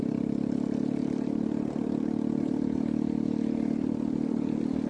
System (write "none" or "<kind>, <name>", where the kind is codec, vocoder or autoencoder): none